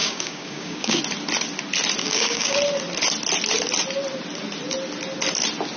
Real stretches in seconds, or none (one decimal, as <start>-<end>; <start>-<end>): 1.0-2.0; 2.6-5.8